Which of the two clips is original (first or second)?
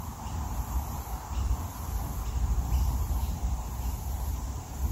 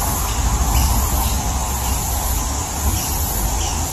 second